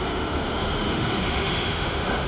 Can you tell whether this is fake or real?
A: fake